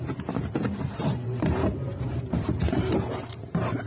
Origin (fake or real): fake